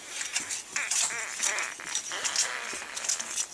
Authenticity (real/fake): real